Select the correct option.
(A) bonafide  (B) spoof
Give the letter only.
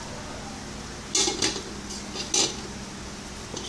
A